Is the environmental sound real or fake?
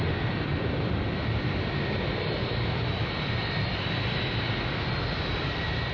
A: fake